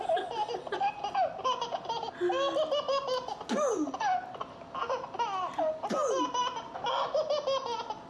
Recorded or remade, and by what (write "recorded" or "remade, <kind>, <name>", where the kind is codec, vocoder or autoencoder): recorded